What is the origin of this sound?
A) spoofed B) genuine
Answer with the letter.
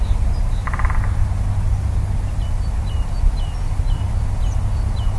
B